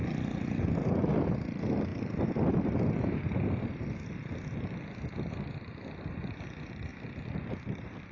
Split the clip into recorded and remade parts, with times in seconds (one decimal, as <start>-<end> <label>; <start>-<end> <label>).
0.0-1.1 remade; 1.1-6.9 recorded; 6.9-8.1 remade